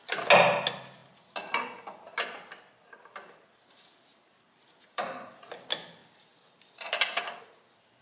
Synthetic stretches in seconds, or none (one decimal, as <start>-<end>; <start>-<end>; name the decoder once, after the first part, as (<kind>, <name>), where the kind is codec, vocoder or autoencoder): 4.1-5.4 (vocoder, BigVGAN v2); 6.0-7.4